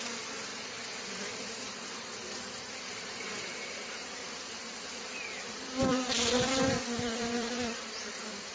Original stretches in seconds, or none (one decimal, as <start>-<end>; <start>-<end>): none